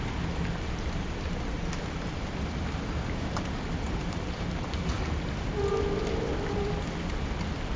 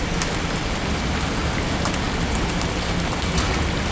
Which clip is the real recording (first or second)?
second